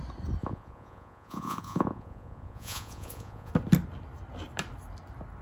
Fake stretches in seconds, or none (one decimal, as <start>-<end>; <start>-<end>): 0.4-3.5